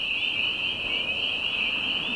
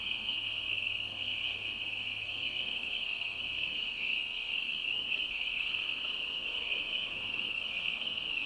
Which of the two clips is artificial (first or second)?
second